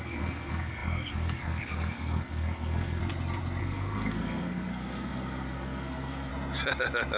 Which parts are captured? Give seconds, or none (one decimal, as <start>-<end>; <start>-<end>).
3.0-3.6; 6.3-7.2